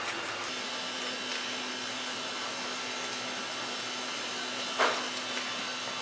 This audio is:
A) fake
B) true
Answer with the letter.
B